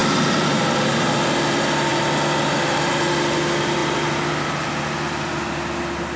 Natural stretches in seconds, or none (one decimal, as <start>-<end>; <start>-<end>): 1.1-6.2